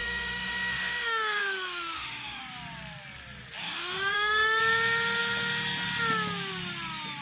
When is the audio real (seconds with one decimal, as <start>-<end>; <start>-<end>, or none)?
2.4-3.6; 4.6-7.2